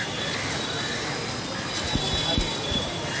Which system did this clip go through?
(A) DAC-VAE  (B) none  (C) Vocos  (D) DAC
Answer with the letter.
B